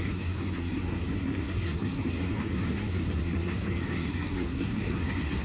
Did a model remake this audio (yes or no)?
yes